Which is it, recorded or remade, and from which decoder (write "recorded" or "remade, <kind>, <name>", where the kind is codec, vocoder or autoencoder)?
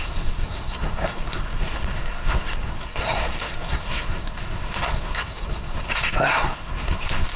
remade, codec, SNAC